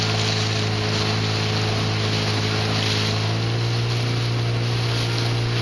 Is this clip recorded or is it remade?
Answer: recorded